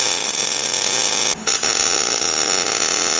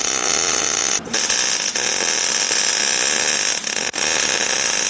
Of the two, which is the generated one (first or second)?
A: second